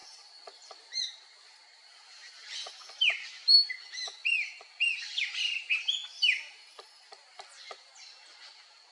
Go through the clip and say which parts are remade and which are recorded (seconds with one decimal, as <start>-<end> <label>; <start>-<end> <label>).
0.0-1.0 remade; 1.0-4.2 recorded; 4.2-4.9 remade; 4.9-6.0 recorded; 6.0-6.9 remade; 6.9-8.9 recorded

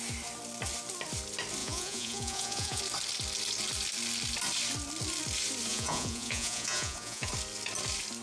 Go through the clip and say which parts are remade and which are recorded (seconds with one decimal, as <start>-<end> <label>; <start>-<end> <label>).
0.0-1.6 recorded; 1.6-2.8 remade; 2.8-5.7 recorded; 5.7-7.3 remade; 7.3-8.2 recorded

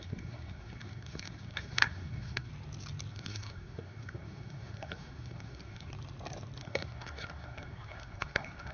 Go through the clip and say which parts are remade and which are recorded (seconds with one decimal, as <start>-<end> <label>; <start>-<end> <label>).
0.0-2.5 remade; 2.5-3.1 recorded; 3.1-5.9 remade; 5.9-6.6 recorded; 6.6-8.7 remade

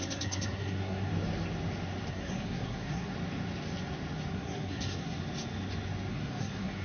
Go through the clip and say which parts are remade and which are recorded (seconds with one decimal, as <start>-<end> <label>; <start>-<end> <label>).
0.0-1.1 remade; 1.1-2.1 recorded; 2.1-3.1 remade; 3.1-4.3 recorded; 4.3-5.2 remade; 5.2-6.1 recorded; 6.1-6.8 remade

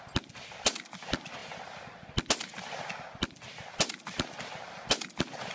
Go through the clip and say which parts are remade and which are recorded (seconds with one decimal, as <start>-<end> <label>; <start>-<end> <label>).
0.0-5.5 recorded

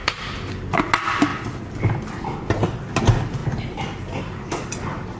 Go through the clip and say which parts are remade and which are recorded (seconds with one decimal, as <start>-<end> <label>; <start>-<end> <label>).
0.0-5.2 recorded

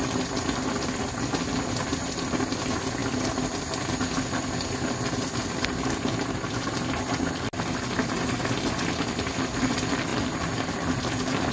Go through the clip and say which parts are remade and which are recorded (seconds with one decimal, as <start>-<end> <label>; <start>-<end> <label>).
0.0-11.5 recorded

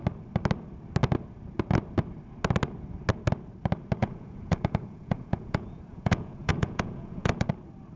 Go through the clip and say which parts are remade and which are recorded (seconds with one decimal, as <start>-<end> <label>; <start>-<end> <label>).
0.0-4.0 recorded; 4.0-7.5 remade; 7.5-8.0 recorded